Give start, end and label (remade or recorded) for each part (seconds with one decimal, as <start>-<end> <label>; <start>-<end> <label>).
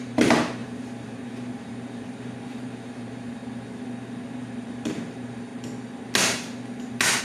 0.0-3.4 remade; 3.4-4.3 recorded; 4.3-5.5 remade; 5.5-7.2 recorded